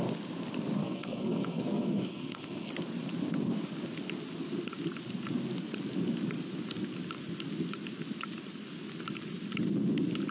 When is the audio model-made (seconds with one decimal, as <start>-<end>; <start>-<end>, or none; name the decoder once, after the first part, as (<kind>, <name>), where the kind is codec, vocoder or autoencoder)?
0.8-2.7 (codec, SNAC)